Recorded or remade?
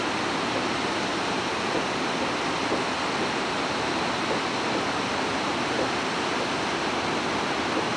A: recorded